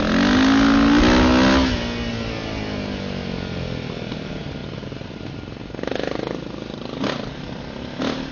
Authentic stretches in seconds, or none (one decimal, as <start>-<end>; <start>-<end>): 0.0-8.3

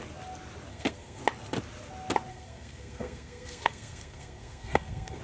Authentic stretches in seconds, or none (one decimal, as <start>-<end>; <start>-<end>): 0.0-0.7; 1.2-2.3

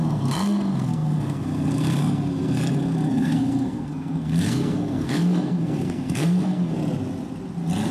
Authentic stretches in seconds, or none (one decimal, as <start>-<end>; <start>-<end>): 6.8-7.9

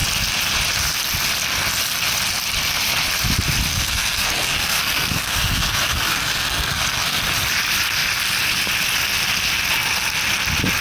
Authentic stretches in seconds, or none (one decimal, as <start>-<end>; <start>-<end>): 0.0-3.7; 7.2-10.8